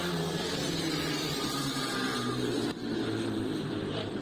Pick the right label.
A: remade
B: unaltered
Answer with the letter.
A